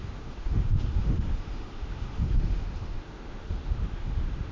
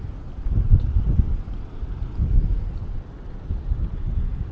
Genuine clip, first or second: second